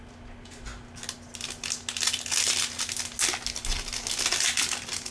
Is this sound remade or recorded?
recorded